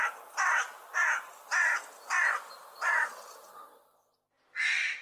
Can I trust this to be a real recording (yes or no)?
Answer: yes